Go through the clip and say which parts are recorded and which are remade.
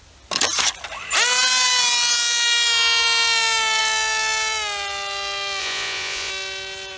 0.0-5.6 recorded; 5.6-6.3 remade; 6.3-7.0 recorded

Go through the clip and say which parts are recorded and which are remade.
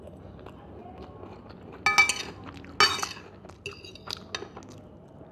0.0-5.3 recorded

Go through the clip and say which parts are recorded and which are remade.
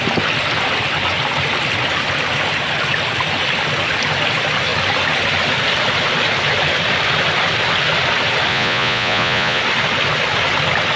0.0-8.5 recorded; 8.5-9.6 remade; 9.6-11.0 recorded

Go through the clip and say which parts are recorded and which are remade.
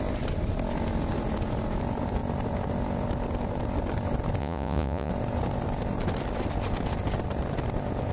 0.0-4.4 recorded; 4.4-5.1 remade; 5.1-8.1 recorded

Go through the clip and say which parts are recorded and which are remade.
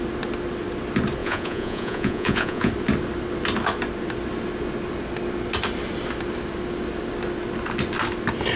0.0-1.2 recorded; 1.2-2.7 remade; 2.7-8.6 recorded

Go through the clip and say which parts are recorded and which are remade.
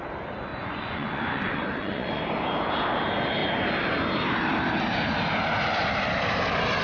0.0-0.5 recorded; 0.5-2.2 remade; 2.2-6.8 recorded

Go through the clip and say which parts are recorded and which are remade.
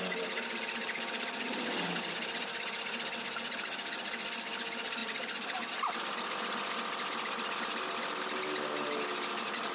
0.0-9.7 recorded